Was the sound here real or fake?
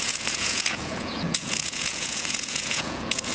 fake